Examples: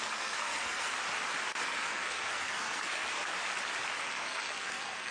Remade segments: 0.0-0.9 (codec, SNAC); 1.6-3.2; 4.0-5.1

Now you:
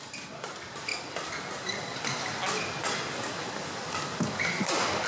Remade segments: none

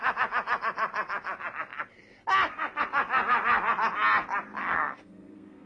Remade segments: 4.6-5.7 (codec, SNAC)

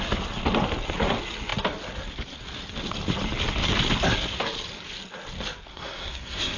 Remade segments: 5.7-6.6 (codec, SNAC)

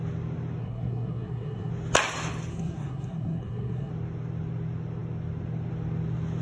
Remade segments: 0.6-1.7 (codec, SNAC); 2.5-3.9